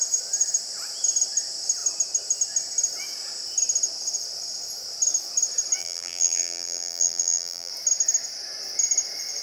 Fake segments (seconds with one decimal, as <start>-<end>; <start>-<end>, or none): 5.8-7.7